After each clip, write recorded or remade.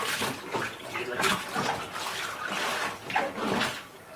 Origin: remade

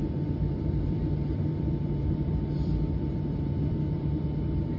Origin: remade